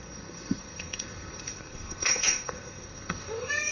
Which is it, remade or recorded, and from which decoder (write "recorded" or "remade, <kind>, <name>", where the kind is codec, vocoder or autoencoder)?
remade, codec, SNAC